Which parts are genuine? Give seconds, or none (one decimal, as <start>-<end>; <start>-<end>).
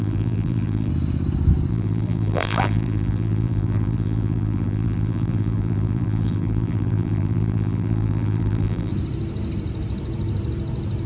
0.9-1.7; 8.9-11.1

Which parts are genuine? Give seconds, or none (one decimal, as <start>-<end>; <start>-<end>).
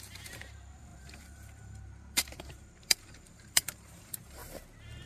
4.4-5.1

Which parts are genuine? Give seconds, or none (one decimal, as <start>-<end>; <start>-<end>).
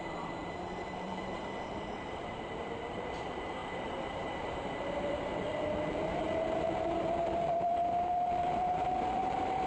none